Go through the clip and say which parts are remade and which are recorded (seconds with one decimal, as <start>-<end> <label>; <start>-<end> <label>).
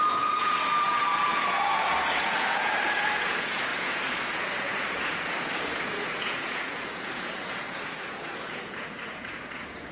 0.0-9.9 remade